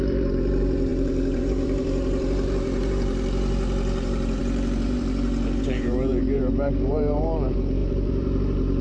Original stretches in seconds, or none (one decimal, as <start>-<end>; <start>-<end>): none